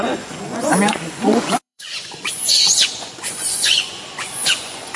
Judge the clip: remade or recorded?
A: remade